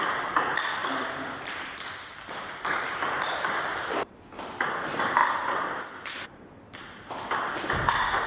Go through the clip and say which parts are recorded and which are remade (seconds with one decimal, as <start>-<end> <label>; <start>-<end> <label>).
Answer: 0.0-0.8 recorded; 0.8-4.2 remade; 4.2-8.3 recorded